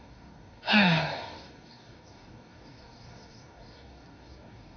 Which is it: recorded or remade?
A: remade